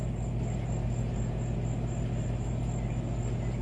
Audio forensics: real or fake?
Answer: real